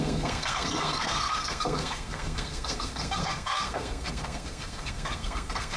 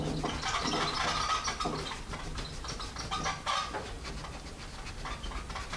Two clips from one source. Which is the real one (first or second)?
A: second